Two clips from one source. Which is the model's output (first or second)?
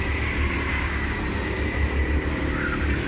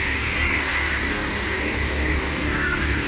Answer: second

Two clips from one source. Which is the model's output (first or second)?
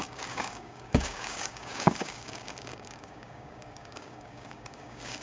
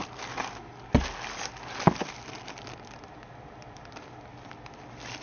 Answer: first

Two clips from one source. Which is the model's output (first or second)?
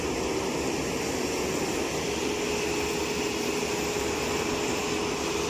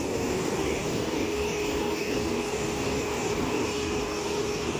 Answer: second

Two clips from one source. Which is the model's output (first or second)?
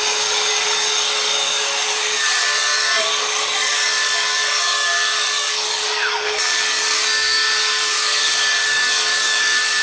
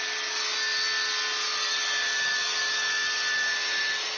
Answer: first